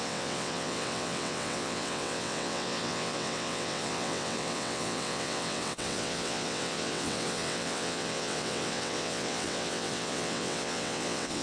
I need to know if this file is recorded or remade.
remade